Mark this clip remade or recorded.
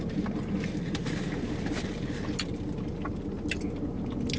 recorded